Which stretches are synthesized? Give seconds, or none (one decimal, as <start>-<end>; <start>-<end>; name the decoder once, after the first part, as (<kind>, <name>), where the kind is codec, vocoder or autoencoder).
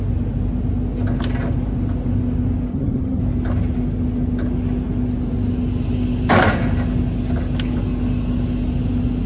2.7-3.2 (vocoder, HiFi-GAN)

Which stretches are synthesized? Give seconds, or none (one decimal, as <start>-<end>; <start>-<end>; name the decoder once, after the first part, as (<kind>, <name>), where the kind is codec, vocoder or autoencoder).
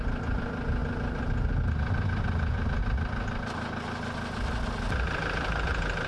none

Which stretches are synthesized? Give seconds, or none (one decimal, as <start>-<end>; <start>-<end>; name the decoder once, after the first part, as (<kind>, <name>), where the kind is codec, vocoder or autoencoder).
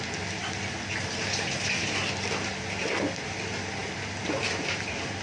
none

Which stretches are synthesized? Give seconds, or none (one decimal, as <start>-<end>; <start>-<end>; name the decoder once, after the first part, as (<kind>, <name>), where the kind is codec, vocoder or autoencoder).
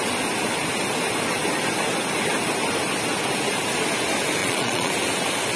4.4-4.9 (vocoder, Vocos)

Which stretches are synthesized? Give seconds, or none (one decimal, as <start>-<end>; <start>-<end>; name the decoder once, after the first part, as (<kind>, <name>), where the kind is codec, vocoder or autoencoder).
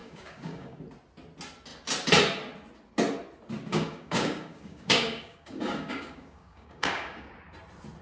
0.0-0.8 (codec, DAC); 3.7-7.3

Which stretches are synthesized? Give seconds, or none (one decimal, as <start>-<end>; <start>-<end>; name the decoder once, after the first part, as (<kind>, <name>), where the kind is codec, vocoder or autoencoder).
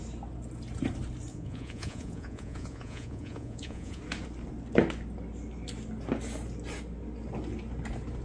1.3-4.0 (vocoder, Vocos)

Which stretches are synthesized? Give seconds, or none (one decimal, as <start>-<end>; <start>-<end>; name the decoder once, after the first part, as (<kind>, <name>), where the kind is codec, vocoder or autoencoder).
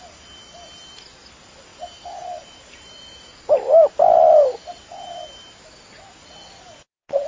1.7-3.9 (vocoder, BigVGAN v2)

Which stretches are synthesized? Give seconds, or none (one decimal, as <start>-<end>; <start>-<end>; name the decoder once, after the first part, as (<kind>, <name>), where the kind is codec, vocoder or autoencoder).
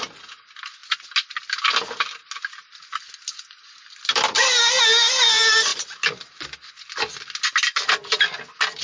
none